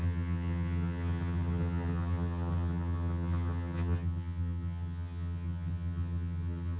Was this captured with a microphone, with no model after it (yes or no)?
no